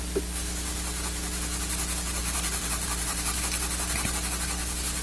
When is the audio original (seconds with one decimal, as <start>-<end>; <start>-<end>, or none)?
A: 0.0-2.2; 3.4-5.0